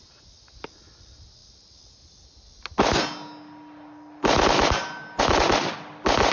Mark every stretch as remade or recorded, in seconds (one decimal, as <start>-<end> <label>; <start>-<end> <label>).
0.0-6.3 recorded